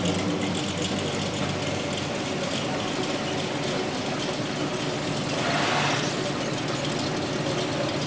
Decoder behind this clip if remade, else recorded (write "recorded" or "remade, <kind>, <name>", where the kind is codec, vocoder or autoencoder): recorded